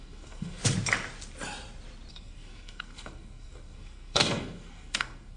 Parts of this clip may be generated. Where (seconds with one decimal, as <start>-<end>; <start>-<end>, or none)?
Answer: 0.0-0.6; 2.1-5.4